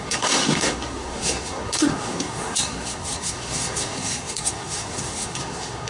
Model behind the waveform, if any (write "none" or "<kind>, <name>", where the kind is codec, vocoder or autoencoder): codec, SNAC